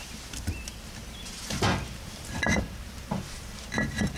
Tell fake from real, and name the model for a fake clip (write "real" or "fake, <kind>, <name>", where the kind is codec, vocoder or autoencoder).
real